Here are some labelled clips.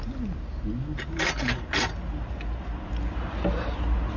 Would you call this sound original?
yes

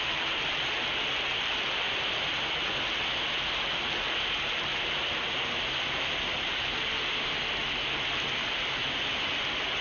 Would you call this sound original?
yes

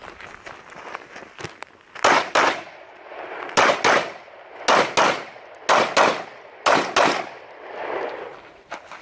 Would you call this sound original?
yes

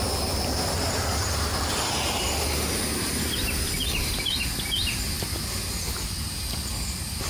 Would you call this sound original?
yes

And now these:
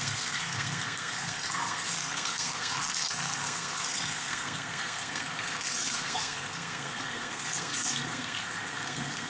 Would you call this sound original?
no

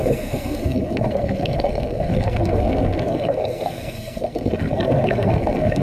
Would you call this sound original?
no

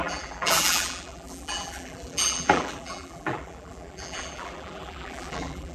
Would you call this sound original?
no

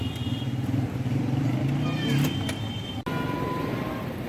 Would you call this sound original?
yes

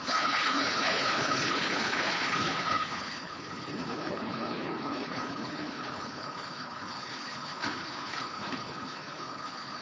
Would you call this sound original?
no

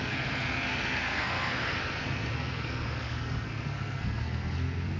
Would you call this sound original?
no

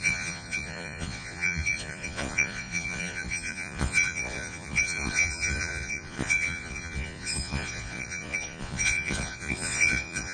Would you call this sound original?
no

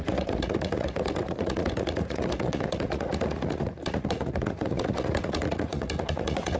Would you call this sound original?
no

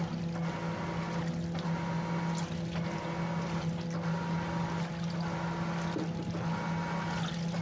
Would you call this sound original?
yes